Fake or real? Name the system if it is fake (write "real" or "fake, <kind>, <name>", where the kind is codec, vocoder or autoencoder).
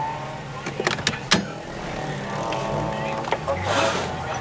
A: real